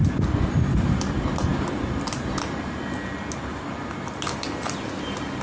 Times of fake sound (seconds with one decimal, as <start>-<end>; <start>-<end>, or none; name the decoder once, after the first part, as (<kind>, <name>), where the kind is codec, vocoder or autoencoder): none